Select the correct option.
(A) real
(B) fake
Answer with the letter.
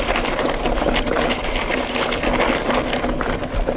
A